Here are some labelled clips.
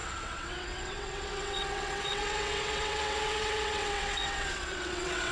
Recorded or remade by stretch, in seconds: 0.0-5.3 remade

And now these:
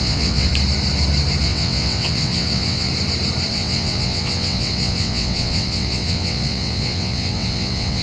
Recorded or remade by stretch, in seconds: 0.0-0.5 remade; 0.5-1.4 recorded; 1.4-2.9 remade; 2.9-3.5 recorded; 3.5-8.0 remade